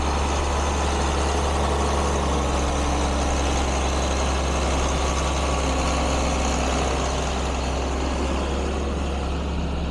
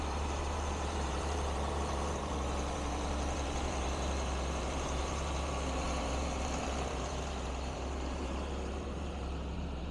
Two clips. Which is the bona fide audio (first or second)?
first